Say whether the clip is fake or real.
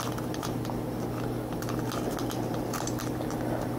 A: real